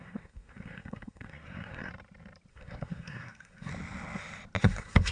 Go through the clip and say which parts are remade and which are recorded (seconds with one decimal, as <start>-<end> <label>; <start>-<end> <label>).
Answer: 0.0-1.9 remade; 1.9-2.5 recorded; 2.5-3.7 remade; 3.7-4.6 recorded; 4.6-5.1 remade